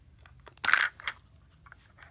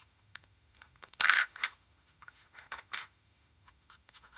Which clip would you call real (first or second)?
first